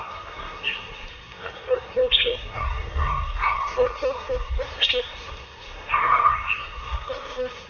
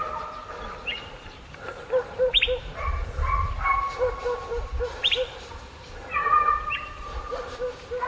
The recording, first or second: second